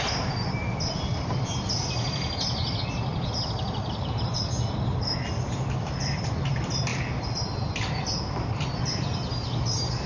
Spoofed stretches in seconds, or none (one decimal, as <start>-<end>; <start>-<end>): none